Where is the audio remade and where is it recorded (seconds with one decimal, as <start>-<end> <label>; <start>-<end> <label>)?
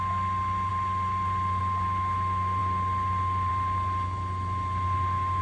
0.0-5.4 recorded